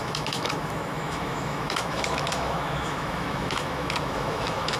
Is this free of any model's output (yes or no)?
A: no